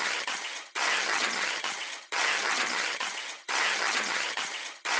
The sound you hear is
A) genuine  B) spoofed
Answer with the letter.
B